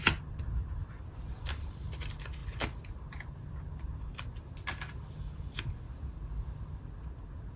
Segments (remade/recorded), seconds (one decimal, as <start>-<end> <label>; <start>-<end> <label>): 0.0-7.6 recorded